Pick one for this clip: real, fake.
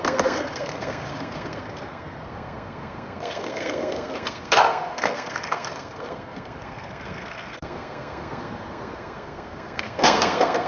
fake